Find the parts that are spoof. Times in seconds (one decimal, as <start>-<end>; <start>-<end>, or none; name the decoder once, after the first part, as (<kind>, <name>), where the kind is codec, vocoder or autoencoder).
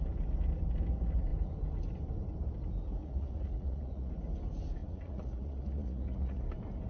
3.0-4.1 (vocoder, Vocos); 4.8-6.4